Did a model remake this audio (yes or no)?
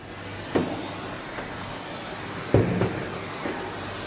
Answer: no